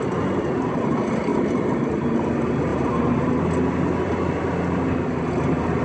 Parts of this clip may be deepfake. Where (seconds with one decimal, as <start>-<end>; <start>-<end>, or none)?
1.3-2.1; 2.7-3.4